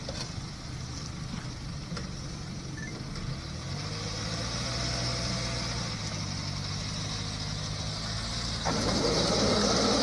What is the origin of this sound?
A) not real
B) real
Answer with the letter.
B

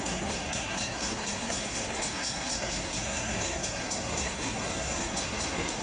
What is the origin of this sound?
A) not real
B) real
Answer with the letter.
A